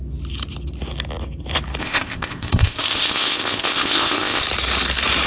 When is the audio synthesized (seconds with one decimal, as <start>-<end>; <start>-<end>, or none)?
1.8-4.4